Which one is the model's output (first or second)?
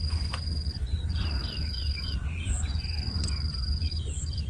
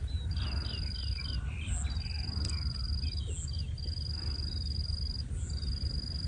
first